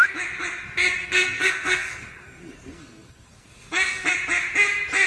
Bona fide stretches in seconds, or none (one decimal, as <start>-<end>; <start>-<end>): 0.0-1.0; 4.1-5.1